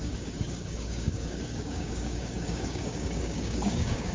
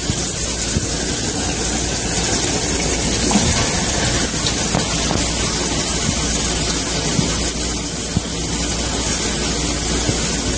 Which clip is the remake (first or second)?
first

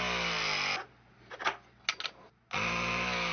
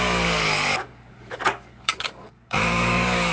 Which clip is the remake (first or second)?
second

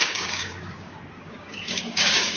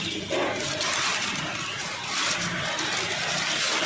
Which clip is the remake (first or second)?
first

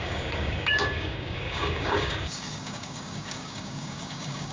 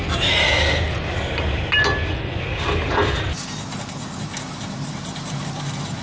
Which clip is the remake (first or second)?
first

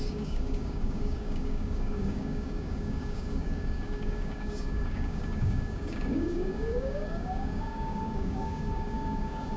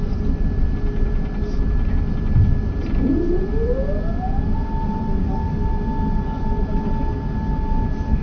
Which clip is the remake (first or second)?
first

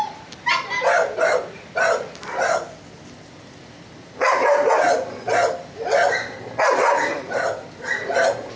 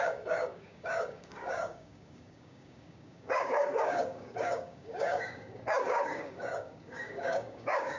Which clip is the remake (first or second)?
second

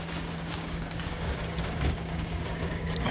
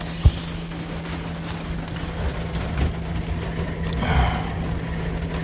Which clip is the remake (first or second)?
first